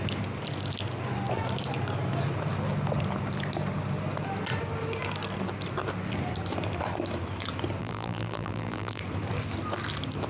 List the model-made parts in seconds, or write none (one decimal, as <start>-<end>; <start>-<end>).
7.8-9.0